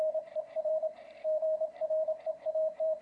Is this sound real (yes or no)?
no